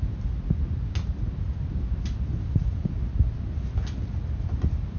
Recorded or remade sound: recorded